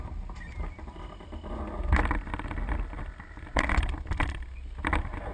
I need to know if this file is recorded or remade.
recorded